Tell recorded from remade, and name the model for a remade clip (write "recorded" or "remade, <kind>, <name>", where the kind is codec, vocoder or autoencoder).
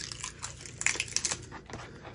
recorded